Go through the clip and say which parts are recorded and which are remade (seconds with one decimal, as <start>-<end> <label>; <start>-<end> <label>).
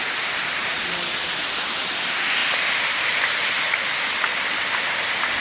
0.0-0.4 recorded; 0.4-1.9 remade; 1.9-2.4 recorded; 2.4-3.2 remade; 3.2-5.4 recorded